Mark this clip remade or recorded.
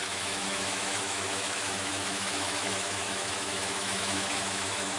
remade